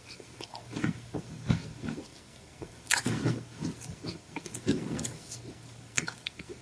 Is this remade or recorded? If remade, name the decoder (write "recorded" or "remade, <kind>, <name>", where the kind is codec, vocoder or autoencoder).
remade, codec, SNAC